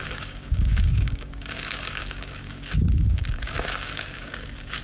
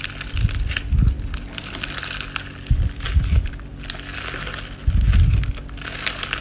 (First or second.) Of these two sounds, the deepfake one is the first